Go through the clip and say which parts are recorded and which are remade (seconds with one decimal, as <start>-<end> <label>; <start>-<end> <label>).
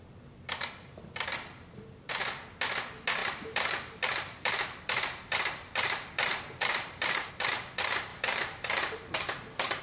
0.0-3.2 recorded; 3.2-7.3 remade; 7.3-8.1 recorded; 8.1-9.8 remade